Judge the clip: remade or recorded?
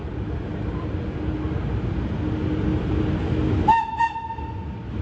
recorded